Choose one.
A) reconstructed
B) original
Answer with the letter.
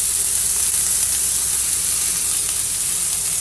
B